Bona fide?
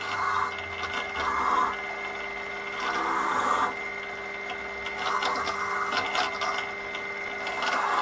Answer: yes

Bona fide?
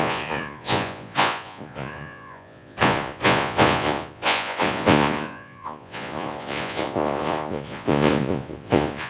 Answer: no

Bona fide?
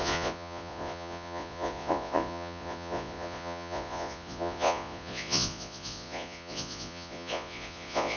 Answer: no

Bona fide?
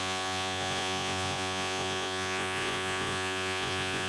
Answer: no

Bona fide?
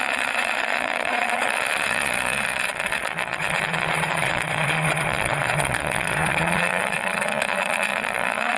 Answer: no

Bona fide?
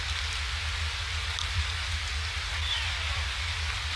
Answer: yes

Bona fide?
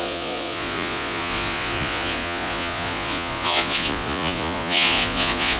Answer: no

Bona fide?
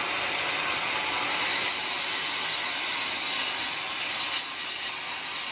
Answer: yes